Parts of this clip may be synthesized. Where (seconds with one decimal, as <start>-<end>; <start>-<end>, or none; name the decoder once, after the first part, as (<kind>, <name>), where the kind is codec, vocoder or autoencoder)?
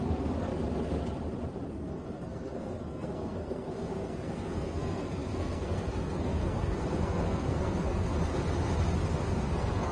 0.0-0.5 (codec, SNAC); 1.7-8.1; 9.1-9.9